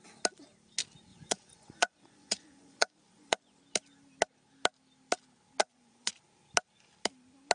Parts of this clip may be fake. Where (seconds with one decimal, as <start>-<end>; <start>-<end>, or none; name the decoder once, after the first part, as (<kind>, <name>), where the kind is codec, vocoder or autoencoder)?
1.1-3.6 (vocoder, Vocos); 5.6-6.1